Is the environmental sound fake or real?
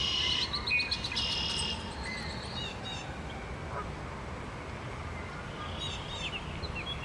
real